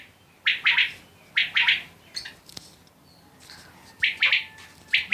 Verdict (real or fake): real